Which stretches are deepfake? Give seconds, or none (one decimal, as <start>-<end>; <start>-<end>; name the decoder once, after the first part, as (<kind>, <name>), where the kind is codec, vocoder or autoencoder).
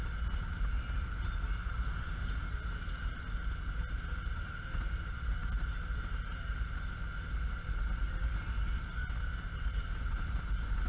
none